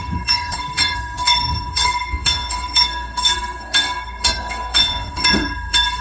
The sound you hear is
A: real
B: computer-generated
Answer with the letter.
B